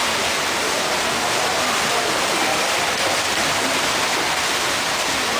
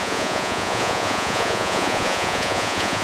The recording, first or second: first